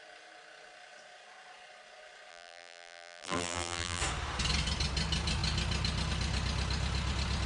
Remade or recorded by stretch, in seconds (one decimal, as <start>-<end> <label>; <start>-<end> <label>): 0.0-2.3 recorded; 2.3-4.0 remade; 4.0-7.5 recorded